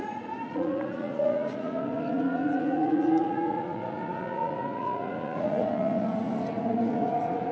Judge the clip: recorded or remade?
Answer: remade